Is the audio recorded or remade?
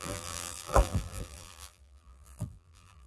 remade